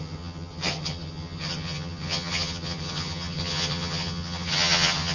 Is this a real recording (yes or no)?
no